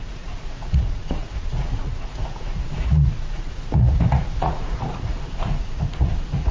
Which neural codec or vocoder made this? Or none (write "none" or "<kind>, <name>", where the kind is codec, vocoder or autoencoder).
vocoder, Vocos